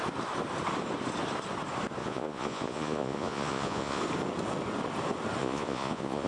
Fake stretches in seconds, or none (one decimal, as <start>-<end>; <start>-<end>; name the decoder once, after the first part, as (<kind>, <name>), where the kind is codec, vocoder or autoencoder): 2.0-4.0 (vocoder, Vocos); 5.4-6.3